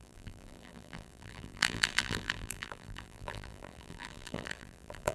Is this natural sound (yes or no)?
no